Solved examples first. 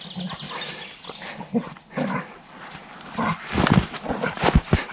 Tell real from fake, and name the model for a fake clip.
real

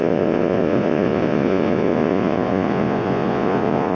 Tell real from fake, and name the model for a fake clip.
fake, vocoder, Vocos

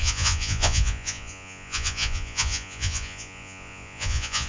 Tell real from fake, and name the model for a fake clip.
fake, vocoder, Vocos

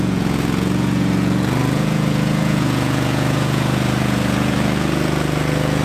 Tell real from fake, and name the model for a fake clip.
fake, vocoder, Vocos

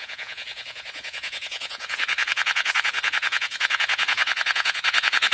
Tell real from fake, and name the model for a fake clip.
fake, vocoder, Vocos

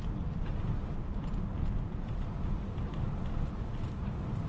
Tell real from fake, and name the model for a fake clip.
real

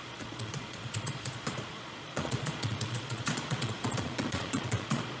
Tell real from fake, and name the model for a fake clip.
fake, vocoder, Vocos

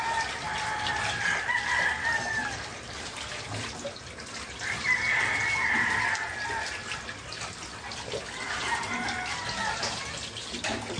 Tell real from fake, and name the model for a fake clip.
real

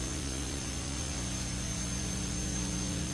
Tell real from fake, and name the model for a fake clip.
fake, vocoder, Vocos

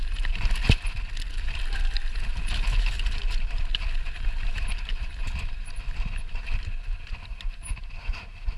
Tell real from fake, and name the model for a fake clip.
real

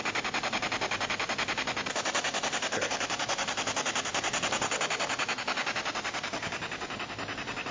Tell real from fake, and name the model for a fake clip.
real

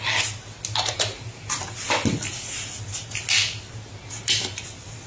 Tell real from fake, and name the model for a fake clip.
real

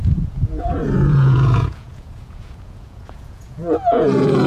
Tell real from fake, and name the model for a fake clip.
fake, vocoder, Vocos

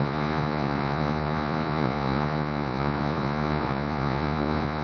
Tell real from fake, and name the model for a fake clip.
fake, vocoder, Vocos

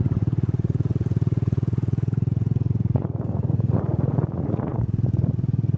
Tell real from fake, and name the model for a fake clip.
fake, vocoder, Vocos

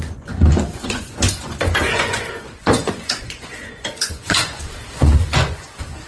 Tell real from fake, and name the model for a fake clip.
fake, vocoder, Vocos